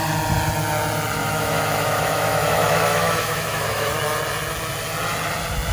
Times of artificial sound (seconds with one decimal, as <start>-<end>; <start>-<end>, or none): 1.2-3.9